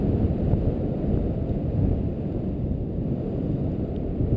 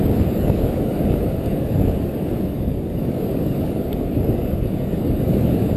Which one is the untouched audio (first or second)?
first